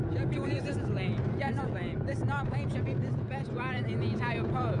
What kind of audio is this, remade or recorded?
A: recorded